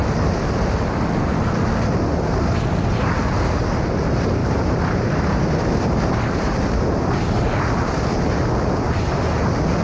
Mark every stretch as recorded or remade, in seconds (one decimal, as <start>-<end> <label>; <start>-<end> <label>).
0.0-4.4 recorded; 4.4-7.1 remade; 7.1-9.8 recorded